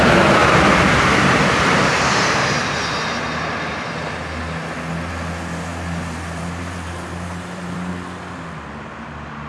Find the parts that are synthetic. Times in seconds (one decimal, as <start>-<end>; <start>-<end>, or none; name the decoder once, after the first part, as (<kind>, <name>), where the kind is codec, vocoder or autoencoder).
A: 5.7-7.9 (vocoder, BigVGAN v2)